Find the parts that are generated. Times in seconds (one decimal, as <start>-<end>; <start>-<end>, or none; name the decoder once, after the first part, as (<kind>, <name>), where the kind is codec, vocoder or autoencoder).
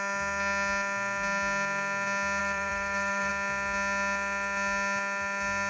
2.4-3.3 (vocoder, BigVGAN v2)